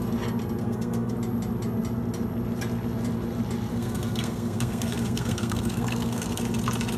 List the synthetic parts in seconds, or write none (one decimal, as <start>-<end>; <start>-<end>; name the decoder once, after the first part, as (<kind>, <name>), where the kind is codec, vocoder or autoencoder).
0.6-1.1 (codec, SNAC); 3.7-6.4